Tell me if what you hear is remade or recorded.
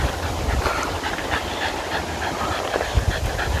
recorded